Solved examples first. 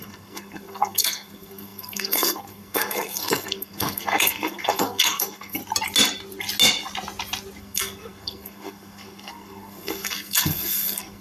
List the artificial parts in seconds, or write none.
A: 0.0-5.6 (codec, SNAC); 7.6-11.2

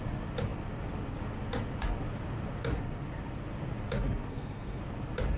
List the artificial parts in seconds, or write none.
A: 4.3-4.8 (codec, SNAC)

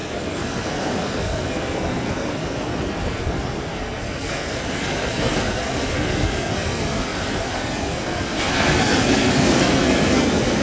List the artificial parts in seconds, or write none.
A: 0.0-10.6 (codec, SNAC)

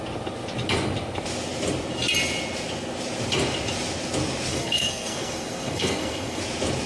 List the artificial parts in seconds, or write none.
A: 4.5-6.4 (codec, SNAC)

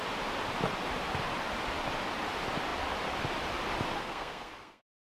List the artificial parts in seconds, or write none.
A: 4.0-5.1 (codec, SNAC)

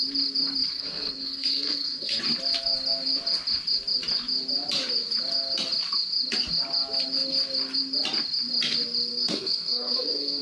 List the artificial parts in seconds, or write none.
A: 0.7-2.2 (codec, SNAC); 9.1-10.4